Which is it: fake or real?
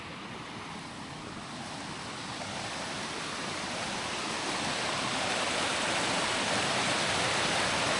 fake